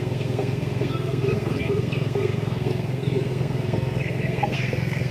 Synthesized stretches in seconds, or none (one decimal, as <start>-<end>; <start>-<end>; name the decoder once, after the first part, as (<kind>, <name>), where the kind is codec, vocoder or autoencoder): 0.0-5.1 (codec, SNAC)